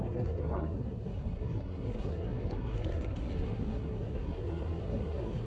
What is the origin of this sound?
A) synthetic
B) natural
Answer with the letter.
A